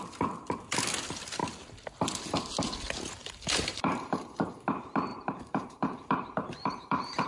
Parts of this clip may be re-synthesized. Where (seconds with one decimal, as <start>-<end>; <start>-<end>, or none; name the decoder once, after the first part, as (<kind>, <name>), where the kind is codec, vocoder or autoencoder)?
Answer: 3.2-4.5 (vocoder, BigVGAN v2); 5.1-7.3